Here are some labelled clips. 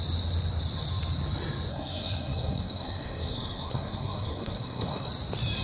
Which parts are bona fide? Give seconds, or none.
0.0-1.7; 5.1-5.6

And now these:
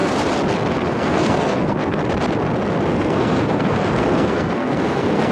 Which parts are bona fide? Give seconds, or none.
0.0-0.7; 2.0-2.9

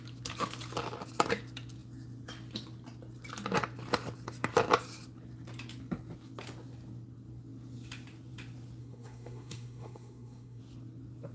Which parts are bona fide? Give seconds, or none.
0.0-8.8; 10.6-11.3